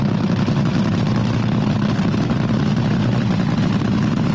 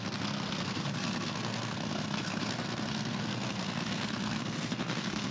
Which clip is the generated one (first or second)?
second